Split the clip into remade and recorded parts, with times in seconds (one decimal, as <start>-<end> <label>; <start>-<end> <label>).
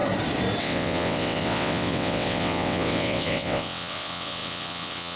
0.0-0.6 recorded; 0.6-5.2 remade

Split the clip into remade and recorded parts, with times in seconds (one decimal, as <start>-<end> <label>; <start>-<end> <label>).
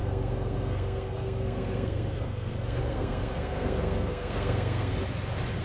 0.0-4.9 remade; 4.9-5.6 recorded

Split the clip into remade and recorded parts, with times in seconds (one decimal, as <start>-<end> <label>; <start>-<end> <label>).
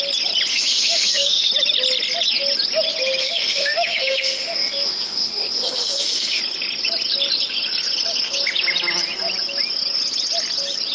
0.0-0.5 recorded; 0.5-1.5 remade; 1.5-3.2 recorded; 3.2-6.4 remade; 6.4-10.9 recorded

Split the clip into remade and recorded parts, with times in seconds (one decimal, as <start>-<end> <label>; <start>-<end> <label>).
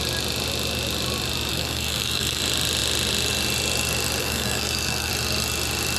0.0-1.5 recorded; 1.5-2.4 remade; 2.4-4.2 recorded; 4.2-5.1 remade; 5.1-6.0 recorded